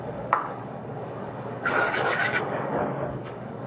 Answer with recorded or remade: remade